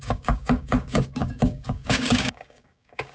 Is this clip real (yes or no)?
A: no